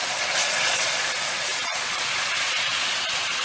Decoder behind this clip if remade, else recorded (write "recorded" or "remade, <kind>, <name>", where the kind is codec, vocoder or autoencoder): remade, vocoder, Vocos